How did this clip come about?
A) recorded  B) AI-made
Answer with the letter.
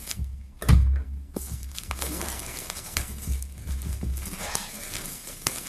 B